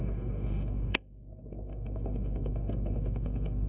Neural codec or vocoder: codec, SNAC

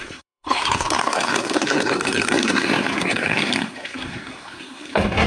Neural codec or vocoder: codec, SNAC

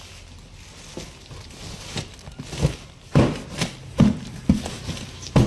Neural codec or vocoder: none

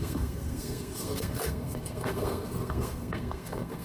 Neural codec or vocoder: codec, SNAC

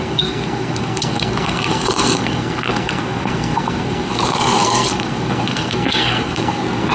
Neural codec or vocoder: codec, SNAC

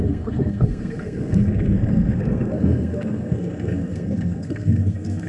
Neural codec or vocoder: codec, SNAC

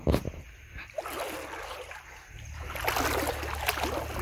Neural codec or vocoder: none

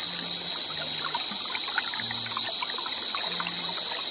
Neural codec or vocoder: none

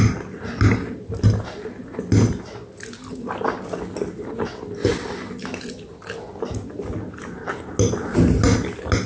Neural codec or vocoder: none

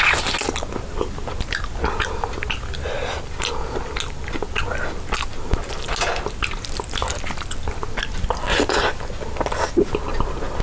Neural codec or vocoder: none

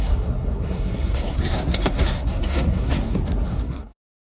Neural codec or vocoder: codec, SNAC